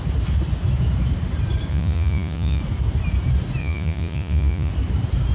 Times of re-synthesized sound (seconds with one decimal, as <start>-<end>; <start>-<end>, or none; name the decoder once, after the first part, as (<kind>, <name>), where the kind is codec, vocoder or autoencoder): 1.7-2.6 (vocoder, Vocos); 3.6-4.7